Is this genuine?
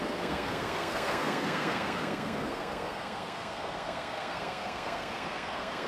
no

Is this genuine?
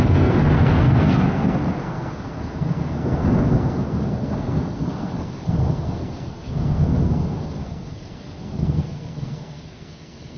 no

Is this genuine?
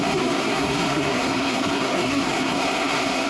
no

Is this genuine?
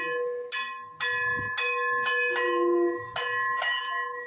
yes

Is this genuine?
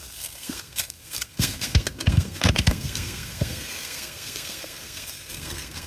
no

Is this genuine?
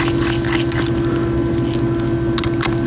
yes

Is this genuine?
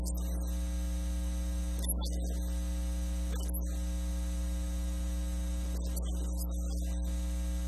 yes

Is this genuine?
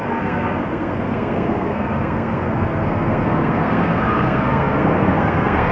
no